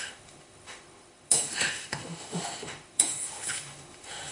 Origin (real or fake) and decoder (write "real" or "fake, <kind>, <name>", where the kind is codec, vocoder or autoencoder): fake, autoencoder, DAC-VAE